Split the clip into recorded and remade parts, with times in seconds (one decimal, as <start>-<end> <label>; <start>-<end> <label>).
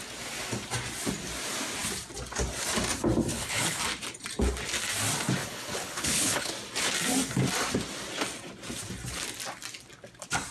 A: 0.0-3.3 recorded; 3.3-3.8 remade; 3.8-5.4 recorded; 5.4-6.5 remade; 6.5-10.5 recorded